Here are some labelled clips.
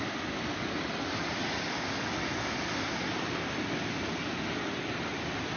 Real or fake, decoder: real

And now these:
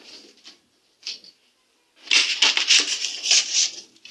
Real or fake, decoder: real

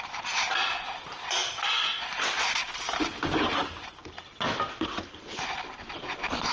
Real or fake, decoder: real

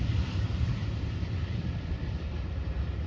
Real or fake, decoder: fake, vocoder, BigVGAN v2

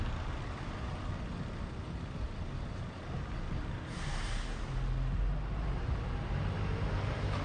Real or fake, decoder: real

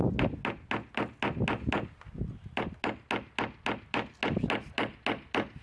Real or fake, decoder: real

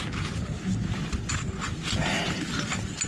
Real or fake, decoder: real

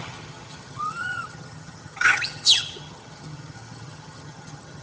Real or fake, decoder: fake, vocoder, HiFi-GAN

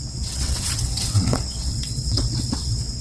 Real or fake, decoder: fake, vocoder, WaveNeXt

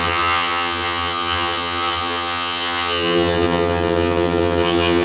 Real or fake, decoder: fake, vocoder, HiFi-GAN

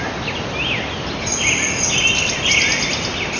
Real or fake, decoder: real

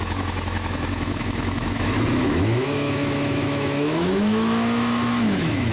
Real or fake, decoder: fake, autoencoder, DAC-VAE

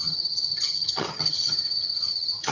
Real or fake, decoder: fake, vocoder, HiFi-GAN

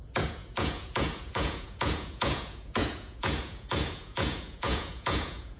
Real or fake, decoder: fake, vocoder, Vocos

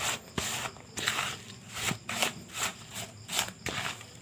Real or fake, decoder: real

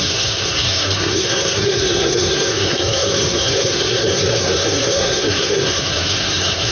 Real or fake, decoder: fake, codec, SNAC